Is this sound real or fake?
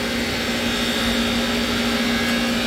real